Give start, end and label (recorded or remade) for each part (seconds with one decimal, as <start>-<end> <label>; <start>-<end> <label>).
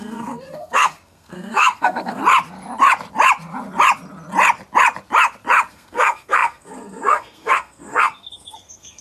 0.0-2.2 remade; 2.2-5.7 recorded; 5.7-9.0 remade